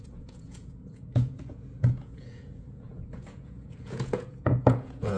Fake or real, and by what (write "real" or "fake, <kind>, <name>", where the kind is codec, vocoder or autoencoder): fake, vocoder, Vocos